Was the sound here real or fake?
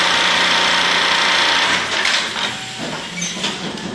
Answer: real